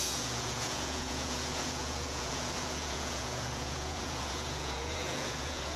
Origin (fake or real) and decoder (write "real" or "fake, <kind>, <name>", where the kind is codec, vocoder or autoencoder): fake, vocoder, Vocos